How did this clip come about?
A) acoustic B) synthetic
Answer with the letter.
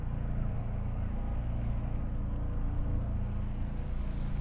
A